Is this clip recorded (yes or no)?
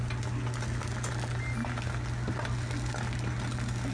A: yes